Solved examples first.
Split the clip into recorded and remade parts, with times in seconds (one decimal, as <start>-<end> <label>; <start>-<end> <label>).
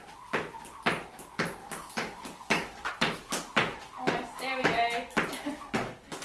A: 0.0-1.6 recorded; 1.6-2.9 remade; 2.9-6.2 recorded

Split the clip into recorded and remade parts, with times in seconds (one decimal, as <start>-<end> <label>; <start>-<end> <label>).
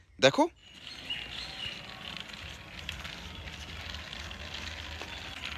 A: 0.0-5.6 recorded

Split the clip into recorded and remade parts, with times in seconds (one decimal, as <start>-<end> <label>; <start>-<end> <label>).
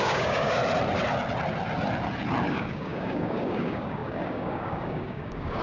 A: 0.0-0.6 remade; 0.6-2.5 recorded; 2.5-5.6 remade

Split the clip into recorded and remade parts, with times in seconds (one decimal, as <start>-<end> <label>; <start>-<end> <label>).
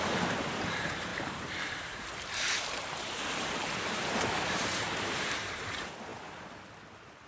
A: 0.0-6.1 remade; 6.1-7.3 recorded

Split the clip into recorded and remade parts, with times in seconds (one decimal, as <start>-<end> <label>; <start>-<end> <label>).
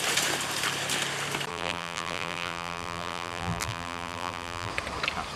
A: 0.0-1.5 recorded; 1.5-4.7 remade; 4.7-5.4 recorded